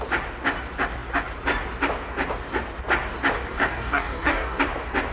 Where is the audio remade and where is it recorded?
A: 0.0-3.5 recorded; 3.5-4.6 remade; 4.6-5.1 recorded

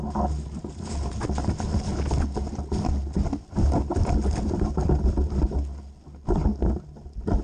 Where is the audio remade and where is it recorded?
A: 0.0-7.4 recorded

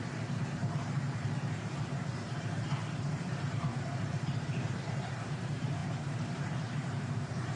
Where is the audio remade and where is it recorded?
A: 0.0-7.6 remade

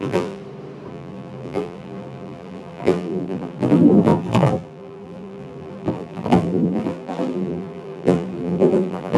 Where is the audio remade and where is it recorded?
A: 0.0-0.4 remade; 0.4-0.9 recorded; 0.9-9.2 remade

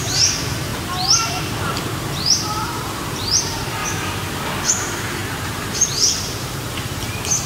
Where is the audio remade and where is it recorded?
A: 0.0-0.7 remade; 0.7-1.6 recorded; 1.6-3.8 remade; 3.8-4.7 recorded; 4.7-7.5 remade

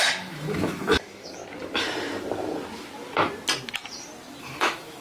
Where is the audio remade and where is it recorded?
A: 0.0-1.4 remade; 1.4-4.4 recorded; 4.4-5.0 remade

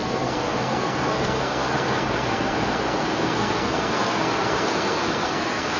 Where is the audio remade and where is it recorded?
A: 0.0-5.8 remade

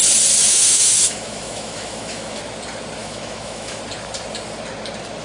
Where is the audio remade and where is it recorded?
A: 0.0-0.5 recorded; 0.5-2.4 remade; 2.4-3.0 recorded; 3.0-3.8 remade; 3.8-5.2 recorded